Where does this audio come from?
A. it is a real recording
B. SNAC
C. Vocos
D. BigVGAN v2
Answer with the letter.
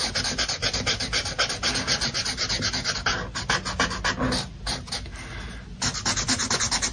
A